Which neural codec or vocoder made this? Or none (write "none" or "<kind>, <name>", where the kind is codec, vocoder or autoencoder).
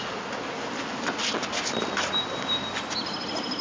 none